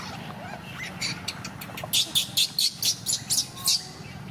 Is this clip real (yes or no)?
yes